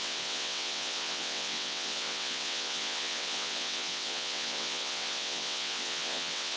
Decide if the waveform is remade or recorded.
remade